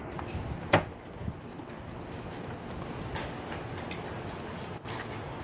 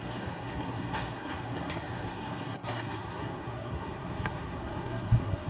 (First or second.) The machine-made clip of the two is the second